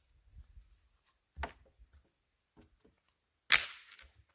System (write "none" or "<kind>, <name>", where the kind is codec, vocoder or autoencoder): none